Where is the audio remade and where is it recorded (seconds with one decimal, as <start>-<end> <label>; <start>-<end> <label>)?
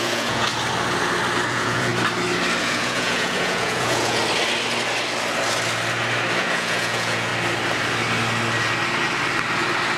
0.0-0.5 remade; 0.5-1.5 recorded; 1.5-1.9 remade; 1.9-2.6 recorded; 2.6-4.2 remade; 4.2-6.4 recorded; 6.4-7.3 remade; 7.3-10.0 recorded